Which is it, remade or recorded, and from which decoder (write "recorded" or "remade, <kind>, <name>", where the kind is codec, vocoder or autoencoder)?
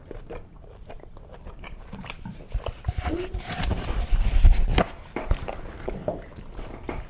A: remade, vocoder, BigVGAN v2